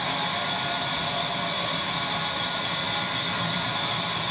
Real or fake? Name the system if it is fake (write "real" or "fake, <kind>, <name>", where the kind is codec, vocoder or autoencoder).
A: real